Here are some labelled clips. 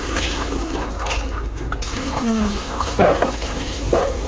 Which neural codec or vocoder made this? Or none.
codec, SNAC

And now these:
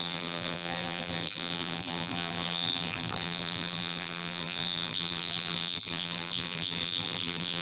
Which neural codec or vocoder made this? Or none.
vocoder, BigVGAN v2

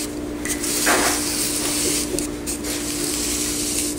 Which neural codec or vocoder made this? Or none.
none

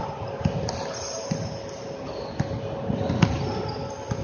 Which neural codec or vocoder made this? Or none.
none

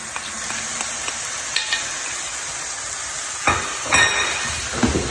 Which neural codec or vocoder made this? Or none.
none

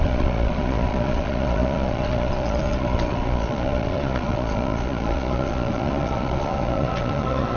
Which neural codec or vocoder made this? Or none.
vocoder, Vocos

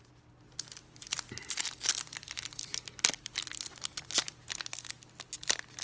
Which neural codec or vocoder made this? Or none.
none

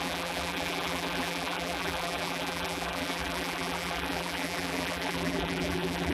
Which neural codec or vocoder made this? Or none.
vocoder, BigVGAN v2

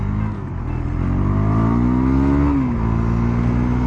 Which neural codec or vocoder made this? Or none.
none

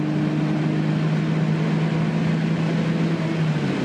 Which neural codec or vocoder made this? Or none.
none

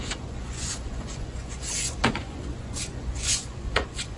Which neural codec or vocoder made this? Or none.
vocoder, Vocos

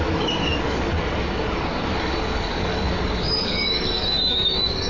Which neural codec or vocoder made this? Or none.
codec, DAC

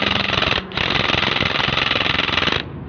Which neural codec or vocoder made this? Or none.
none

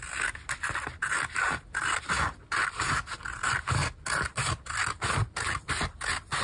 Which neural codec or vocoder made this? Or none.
none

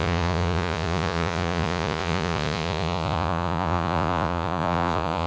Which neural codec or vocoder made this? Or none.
vocoder, Vocos